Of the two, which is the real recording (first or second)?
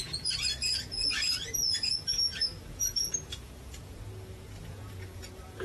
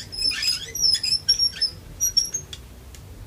second